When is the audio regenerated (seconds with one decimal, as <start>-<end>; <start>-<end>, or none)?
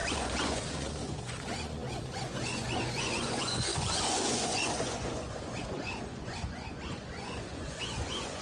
0.0-8.4